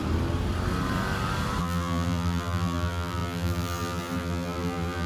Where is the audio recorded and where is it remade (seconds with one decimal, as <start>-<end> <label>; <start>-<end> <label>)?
0.0-1.6 recorded; 1.6-5.1 remade